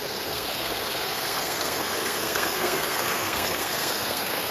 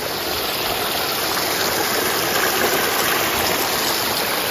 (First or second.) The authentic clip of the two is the second